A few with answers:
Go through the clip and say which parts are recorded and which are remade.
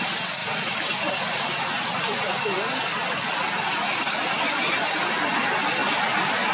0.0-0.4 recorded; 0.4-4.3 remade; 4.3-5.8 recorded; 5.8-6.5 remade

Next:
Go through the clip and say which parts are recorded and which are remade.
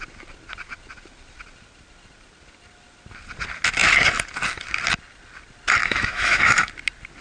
0.0-5.8 recorded; 5.8-6.7 remade; 6.7-7.2 recorded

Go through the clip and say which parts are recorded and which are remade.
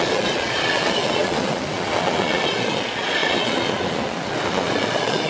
0.0-5.3 remade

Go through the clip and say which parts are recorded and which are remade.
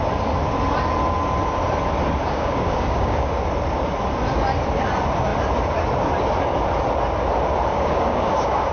0.0-2.2 recorded; 2.2-3.3 remade; 3.3-7.7 recorded; 7.7-8.7 remade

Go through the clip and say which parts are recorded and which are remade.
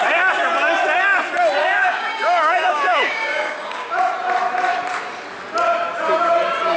0.0-1.6 recorded; 1.6-3.9 remade; 3.9-6.8 recorded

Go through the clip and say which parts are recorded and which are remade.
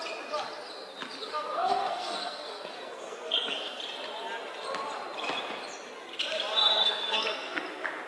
0.0-1.3 recorded; 1.3-3.8 remade; 3.8-6.7 recorded; 6.7-7.6 remade; 7.6-8.1 recorded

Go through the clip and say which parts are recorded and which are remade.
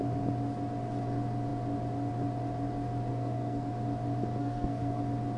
0.0-3.1 recorded; 3.1-3.7 remade; 3.7-4.4 recorded; 4.4-5.0 remade; 5.0-5.4 recorded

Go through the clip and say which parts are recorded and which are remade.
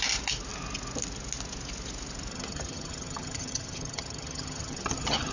0.0-2.3 recorded; 2.3-5.3 remade